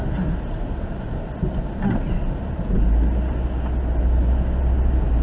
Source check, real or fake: real